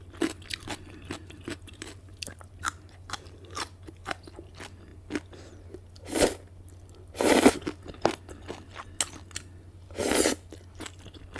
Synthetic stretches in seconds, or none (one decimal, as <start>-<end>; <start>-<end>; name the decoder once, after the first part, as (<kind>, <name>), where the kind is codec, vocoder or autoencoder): 1.2-3.9 (vocoder, BigVGAN v2)